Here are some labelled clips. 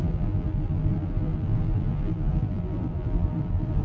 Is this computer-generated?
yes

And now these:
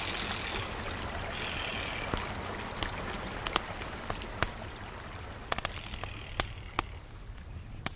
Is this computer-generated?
no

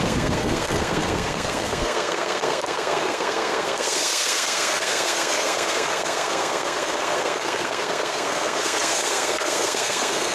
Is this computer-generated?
yes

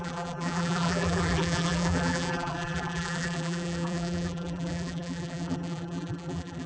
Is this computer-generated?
yes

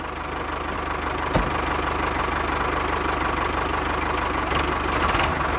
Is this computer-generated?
no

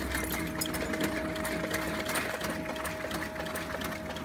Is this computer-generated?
no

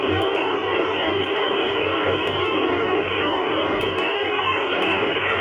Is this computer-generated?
yes